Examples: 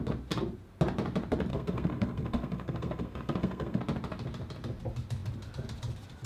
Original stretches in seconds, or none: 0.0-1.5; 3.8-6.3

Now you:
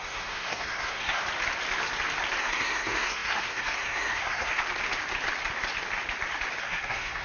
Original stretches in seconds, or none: 1.2-2.4; 4.6-6.6